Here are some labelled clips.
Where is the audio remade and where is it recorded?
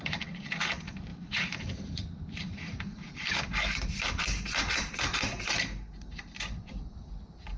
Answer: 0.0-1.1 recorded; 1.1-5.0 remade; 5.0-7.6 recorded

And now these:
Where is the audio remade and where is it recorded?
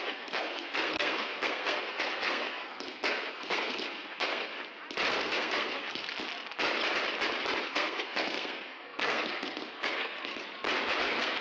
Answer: 0.0-4.5 remade; 4.5-5.1 recorded; 5.1-6.1 remade; 6.1-7.6 recorded; 7.6-10.3 remade; 10.3-11.0 recorded; 11.0-11.4 remade